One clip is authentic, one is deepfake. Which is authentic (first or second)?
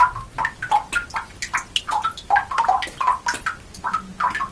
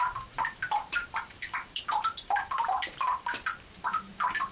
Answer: first